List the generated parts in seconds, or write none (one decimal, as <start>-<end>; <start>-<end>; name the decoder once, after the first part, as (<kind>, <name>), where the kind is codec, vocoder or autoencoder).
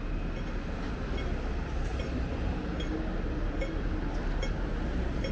1.9-2.6 (vocoder, BigVGAN v2)